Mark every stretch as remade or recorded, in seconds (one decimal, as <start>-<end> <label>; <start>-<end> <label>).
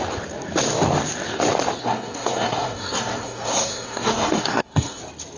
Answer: 0.0-1.8 recorded; 1.8-5.0 remade; 5.0-5.4 recorded